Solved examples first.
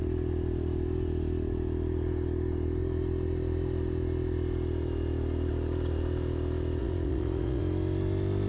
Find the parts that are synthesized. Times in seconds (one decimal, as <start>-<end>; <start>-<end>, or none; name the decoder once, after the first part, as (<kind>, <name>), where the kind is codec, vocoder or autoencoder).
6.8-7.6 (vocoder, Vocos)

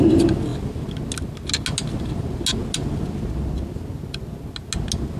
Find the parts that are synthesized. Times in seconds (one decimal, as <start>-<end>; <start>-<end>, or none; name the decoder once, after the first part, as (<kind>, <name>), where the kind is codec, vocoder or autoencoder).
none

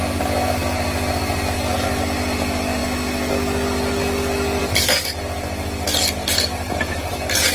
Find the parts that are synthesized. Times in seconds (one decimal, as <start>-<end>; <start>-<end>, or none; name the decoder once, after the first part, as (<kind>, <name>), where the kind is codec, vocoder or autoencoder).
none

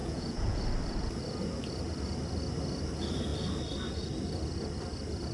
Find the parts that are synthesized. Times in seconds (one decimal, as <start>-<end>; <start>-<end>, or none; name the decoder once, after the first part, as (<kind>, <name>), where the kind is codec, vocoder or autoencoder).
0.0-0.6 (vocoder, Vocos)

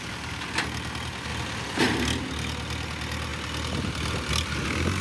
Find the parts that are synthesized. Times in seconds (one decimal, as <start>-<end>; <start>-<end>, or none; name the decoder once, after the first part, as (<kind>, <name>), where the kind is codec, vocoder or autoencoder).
none

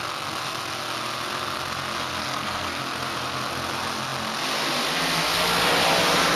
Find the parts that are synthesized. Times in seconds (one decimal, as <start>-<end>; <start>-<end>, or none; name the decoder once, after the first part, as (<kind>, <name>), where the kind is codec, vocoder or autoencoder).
2.2-2.8 (codec, SNAC)

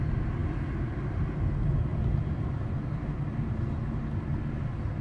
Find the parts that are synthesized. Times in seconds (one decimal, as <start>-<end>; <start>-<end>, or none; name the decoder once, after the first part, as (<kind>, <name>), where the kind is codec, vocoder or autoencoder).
none